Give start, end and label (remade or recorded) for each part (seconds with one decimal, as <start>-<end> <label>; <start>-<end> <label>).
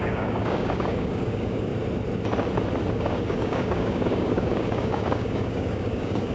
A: 0.0-1.7 remade; 1.7-2.9 recorded; 2.9-6.3 remade